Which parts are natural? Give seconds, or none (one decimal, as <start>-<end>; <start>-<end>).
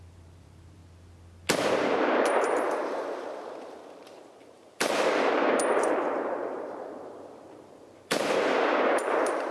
0.8-1.6